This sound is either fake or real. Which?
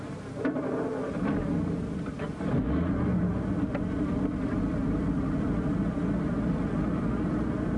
real